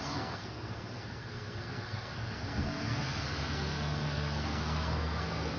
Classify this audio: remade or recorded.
remade